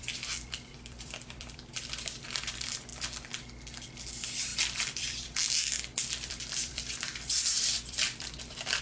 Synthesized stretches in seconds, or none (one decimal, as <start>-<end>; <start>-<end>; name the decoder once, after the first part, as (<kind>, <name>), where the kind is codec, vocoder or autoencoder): 0.0-2.9 (vocoder, BigVGAN v2); 4.1-8.8